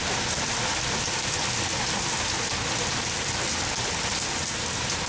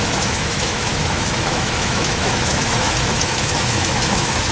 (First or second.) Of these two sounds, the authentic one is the first